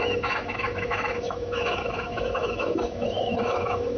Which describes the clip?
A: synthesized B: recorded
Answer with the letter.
A